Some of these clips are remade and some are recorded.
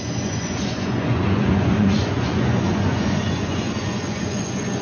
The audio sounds remade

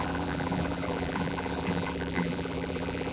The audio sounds remade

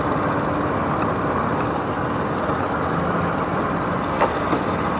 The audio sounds recorded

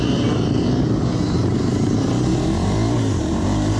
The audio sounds remade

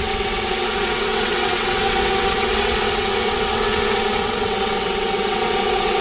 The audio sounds remade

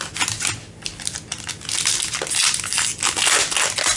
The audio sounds recorded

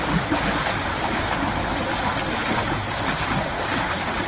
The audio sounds recorded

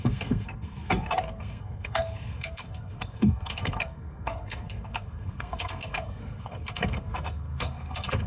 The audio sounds remade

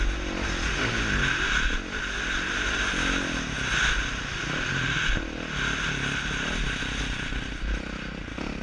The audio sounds recorded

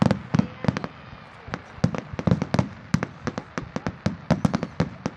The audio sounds recorded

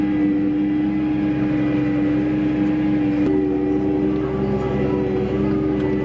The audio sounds recorded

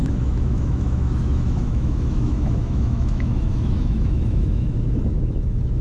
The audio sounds remade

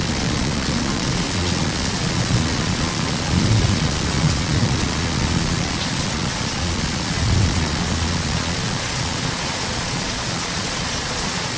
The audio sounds remade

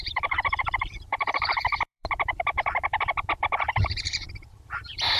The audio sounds remade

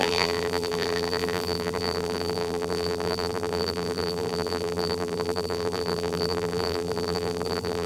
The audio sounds remade